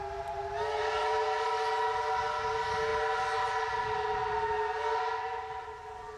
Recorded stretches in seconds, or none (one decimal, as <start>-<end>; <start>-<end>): 0.0-6.2